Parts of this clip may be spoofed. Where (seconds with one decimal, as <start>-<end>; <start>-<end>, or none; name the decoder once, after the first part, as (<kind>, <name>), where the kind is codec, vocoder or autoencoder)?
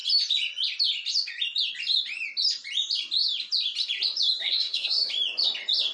4.4-5.1 (codec, SNAC)